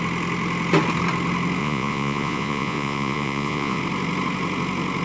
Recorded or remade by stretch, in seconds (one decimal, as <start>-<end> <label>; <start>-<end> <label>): 0.0-1.6 recorded; 1.6-3.8 remade; 3.8-5.0 recorded